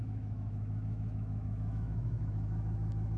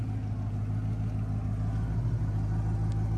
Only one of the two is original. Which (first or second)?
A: second